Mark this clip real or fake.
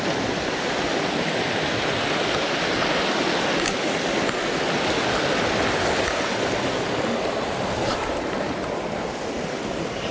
real